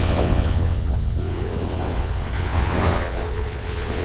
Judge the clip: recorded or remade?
remade